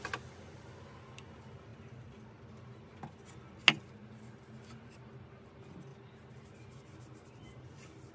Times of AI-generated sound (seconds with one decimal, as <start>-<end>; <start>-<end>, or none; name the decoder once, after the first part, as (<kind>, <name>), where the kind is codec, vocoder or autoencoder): none